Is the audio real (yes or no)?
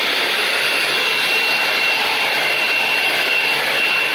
yes